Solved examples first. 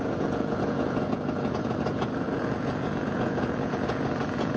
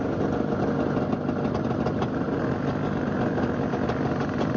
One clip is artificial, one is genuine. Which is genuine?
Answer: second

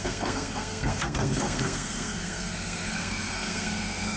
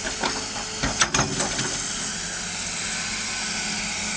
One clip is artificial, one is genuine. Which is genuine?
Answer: second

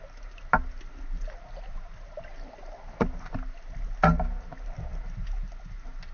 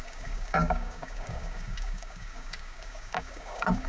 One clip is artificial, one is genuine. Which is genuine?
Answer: first